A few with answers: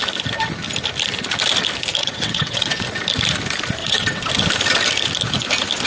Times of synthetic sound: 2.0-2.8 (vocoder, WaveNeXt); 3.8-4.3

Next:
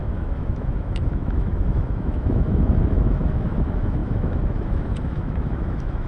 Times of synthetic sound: 0.0-6.1 (autoencoder, DAC-VAE)